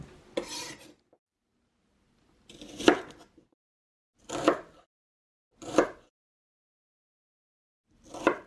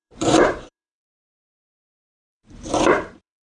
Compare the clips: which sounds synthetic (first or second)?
second